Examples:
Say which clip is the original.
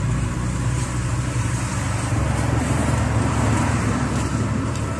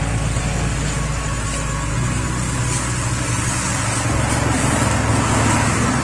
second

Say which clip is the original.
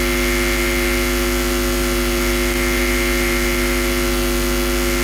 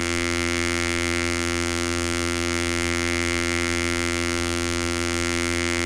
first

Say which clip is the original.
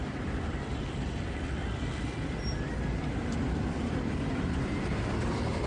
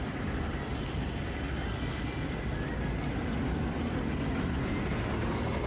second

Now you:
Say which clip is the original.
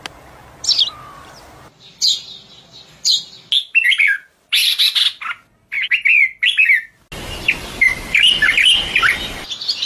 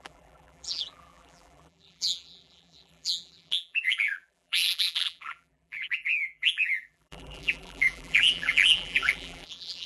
first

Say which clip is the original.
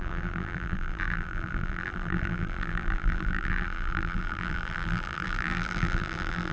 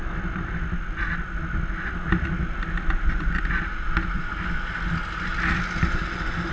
second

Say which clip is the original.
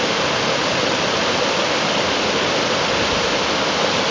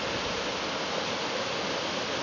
second